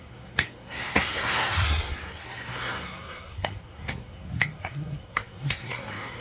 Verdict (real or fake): fake